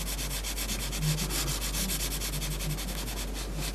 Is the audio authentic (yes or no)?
yes